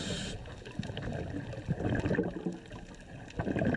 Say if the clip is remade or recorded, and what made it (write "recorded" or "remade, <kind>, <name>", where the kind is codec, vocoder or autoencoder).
recorded